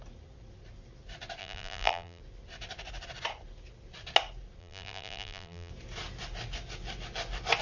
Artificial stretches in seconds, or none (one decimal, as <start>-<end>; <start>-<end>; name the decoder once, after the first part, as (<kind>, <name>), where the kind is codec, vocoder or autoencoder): 1.4-2.2 (vocoder, BigVGAN v2); 4.6-5.7